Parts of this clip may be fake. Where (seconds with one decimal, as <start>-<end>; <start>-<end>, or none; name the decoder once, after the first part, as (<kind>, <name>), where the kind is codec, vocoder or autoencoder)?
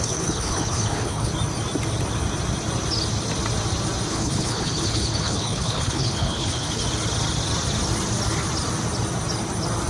0.0-1.3 (codec, HILCodec); 4.1-6.8